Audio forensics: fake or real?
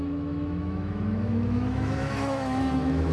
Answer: fake